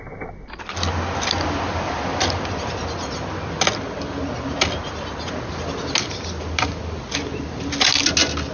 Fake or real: real